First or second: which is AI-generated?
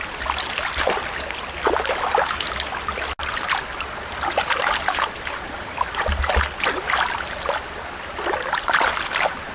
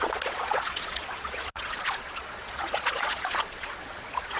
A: second